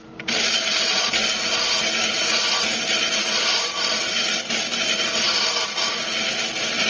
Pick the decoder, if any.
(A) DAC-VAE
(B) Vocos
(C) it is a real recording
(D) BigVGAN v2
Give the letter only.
C